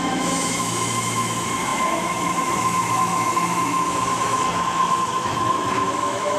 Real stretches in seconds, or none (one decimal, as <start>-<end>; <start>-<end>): none